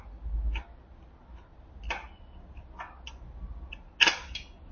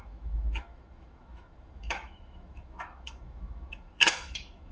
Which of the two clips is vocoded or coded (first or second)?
second